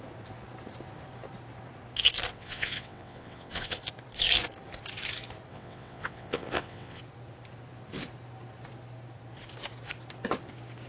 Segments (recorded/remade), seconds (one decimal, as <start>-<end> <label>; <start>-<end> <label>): 0.0-2.3 recorded; 2.3-3.8 remade; 3.8-5.5 recorded; 5.5-7.0 remade; 7.0-10.9 recorded